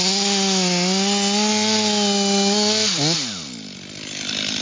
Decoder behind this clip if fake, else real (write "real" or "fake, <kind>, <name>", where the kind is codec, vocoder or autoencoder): real